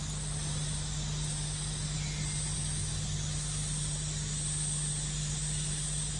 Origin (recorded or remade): recorded